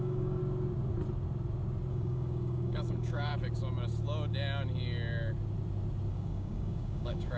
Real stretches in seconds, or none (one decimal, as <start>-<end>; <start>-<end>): 0.4-1.9; 3.3-6.1